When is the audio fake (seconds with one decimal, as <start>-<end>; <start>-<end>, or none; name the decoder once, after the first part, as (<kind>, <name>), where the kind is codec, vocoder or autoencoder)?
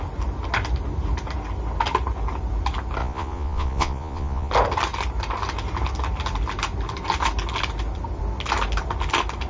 3.0-4.5 (vocoder, Vocos)